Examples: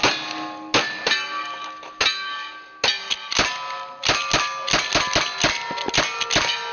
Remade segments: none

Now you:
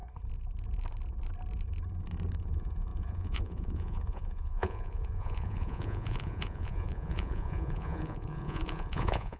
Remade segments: 2.4-9.4 (vocoder, Vocos)